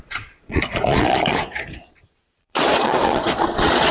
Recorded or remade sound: remade